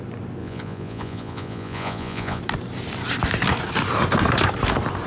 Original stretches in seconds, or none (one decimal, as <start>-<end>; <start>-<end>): 0.0-0.4; 2.4-5.1